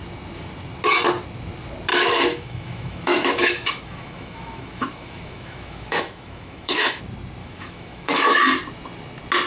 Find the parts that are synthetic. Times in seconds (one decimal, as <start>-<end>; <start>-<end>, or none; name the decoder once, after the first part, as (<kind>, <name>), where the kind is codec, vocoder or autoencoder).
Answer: 1.9-7.0 (autoencoder, DAC-VAE); 7.4-8.3